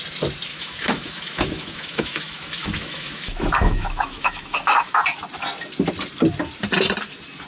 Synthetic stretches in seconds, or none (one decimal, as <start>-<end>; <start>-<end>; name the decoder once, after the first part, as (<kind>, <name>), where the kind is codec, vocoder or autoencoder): 0.5-5.0 (autoencoder, DAC-VAE)